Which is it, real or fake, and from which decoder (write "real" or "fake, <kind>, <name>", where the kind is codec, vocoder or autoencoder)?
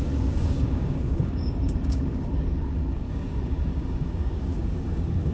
fake, codec, DAC